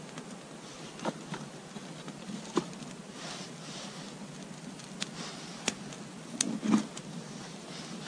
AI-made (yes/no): no